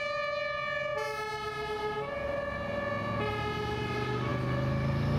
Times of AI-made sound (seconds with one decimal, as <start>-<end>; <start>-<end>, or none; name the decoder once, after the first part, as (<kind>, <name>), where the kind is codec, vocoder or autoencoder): none